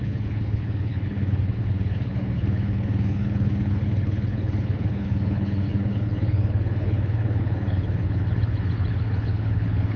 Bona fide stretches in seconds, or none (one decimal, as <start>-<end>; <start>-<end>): none